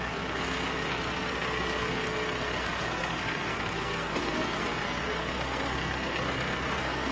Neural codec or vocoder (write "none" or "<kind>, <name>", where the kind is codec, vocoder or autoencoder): codec, SNAC